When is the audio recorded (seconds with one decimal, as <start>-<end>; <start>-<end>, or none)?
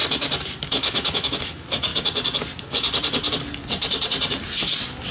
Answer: 0.0-0.6; 1.9-5.1